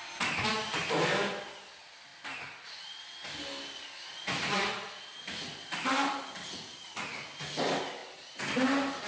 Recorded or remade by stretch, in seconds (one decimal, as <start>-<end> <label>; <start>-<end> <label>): 0.0-9.1 recorded